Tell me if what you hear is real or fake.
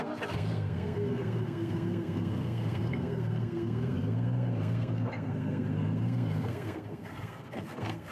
fake